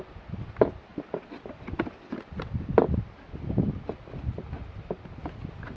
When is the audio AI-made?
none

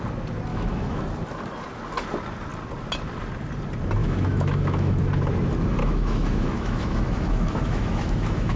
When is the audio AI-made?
0.5-1.0; 4.0-5.0; 5.8-8.6